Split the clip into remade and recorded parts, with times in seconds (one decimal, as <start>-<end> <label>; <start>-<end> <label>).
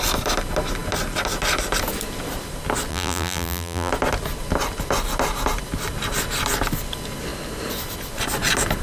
0.0-2.9 recorded; 2.9-3.9 remade; 3.9-8.8 recorded